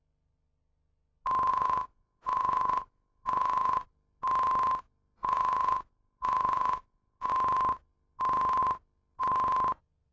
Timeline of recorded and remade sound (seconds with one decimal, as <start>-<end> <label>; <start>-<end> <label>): 0.0-1.5 recorded; 1.5-3.9 remade; 3.9-5.2 recorded; 5.2-7.3 remade; 7.3-10.1 recorded